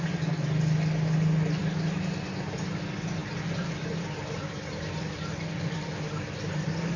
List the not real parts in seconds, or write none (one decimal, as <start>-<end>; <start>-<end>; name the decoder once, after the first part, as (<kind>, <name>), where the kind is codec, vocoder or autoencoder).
3.2-4.9 (vocoder, BigVGAN v2)

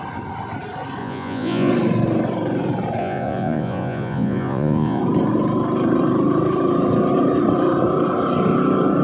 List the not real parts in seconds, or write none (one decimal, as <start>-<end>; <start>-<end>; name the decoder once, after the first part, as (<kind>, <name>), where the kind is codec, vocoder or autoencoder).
1.0-1.7 (vocoder, Vocos); 3.0-5.0

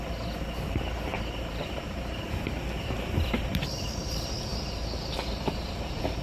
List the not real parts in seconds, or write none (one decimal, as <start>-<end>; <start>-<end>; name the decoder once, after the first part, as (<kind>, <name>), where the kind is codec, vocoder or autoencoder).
1.1-2.5 (vocoder, BigVGAN v2)

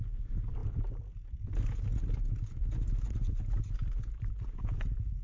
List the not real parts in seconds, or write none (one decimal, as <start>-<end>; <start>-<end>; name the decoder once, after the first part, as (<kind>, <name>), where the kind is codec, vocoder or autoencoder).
none

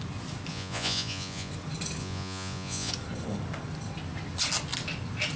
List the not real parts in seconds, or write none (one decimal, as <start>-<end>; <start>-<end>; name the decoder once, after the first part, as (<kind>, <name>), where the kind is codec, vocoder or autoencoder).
0.5-1.5 (vocoder, Vocos); 2.0-2.9

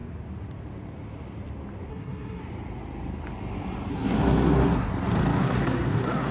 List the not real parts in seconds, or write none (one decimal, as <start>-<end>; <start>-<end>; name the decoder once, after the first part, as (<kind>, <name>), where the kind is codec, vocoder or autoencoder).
1.9-2.4 (codec, SNAC); 3.9-4.9; 5.4-6.3

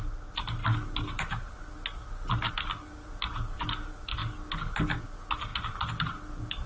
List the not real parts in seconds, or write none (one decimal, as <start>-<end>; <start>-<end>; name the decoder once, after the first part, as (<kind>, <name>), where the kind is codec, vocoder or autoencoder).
none